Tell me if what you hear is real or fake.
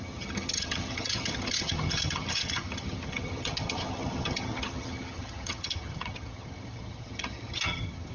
fake